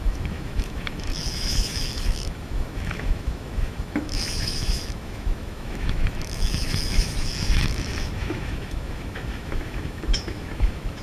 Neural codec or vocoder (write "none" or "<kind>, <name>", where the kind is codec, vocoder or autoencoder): autoencoder, DAC-VAE